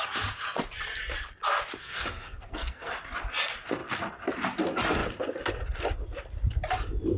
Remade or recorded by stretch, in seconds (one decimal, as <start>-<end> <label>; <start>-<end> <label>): 0.0-1.8 recorded; 1.8-2.9 remade; 2.9-7.2 recorded